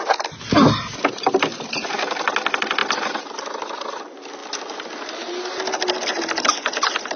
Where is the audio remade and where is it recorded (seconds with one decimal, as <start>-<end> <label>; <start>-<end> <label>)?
0.0-7.2 recorded